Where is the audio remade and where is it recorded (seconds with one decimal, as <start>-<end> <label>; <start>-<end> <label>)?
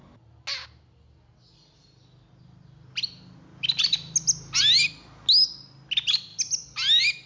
0.0-7.3 recorded